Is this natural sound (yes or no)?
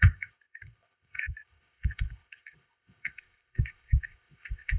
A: no